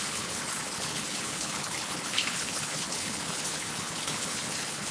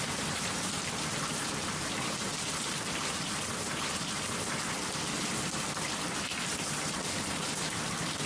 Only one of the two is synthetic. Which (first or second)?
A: first